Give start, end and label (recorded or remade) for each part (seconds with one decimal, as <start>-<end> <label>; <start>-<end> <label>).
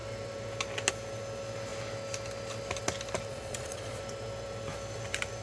0.0-3.3 recorded; 3.3-4.0 remade; 4.0-5.4 recorded